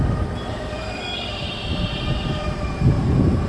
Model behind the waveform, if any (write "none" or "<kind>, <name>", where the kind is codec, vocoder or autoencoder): vocoder, BigVGAN v2